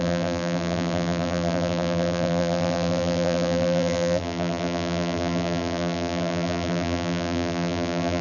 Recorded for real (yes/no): no